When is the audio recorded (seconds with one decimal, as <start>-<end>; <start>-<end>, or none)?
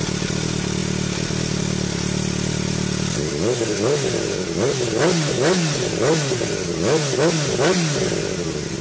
0.0-8.8